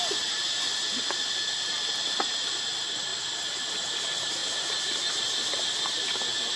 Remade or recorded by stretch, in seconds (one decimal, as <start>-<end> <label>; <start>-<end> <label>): 0.0-6.6 recorded